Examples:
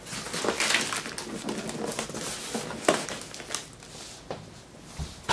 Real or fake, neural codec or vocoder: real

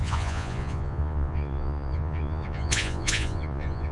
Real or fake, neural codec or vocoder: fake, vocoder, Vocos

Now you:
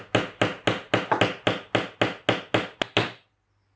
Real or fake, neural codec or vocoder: real